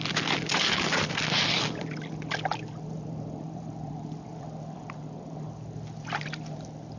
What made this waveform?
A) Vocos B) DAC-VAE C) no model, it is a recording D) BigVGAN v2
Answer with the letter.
D